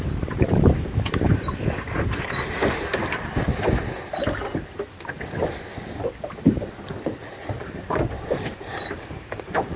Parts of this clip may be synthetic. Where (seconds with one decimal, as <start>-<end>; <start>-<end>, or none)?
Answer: 0.0-3.0; 7.6-9.8

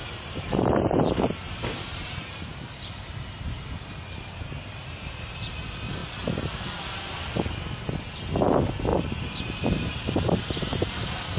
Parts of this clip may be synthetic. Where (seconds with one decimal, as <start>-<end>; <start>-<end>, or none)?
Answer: 0.0-5.1; 8.9-11.4

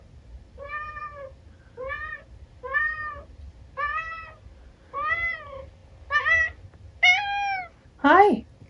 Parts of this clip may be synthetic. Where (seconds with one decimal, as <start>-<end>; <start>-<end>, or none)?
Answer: none

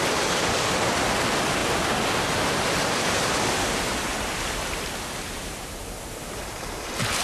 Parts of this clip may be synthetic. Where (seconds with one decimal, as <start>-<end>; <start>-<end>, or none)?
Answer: none